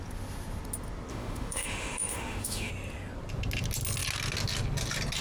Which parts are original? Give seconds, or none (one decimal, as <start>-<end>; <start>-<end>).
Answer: 0.0-1.1; 2.7-5.2